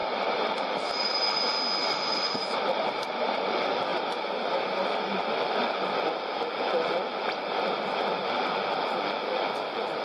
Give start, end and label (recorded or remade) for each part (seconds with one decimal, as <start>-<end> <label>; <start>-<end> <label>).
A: 0.0-1.4 remade; 1.4-1.8 recorded; 1.8-3.4 remade; 3.4-3.9 recorded; 3.9-5.5 remade; 5.5-10.0 recorded